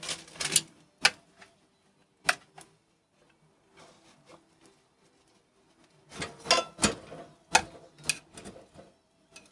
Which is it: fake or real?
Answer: real